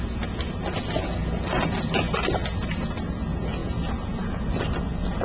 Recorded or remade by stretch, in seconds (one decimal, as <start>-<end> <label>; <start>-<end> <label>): 0.0-5.2 recorded